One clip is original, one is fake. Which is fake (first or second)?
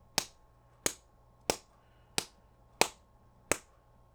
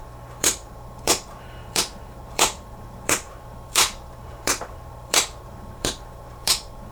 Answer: second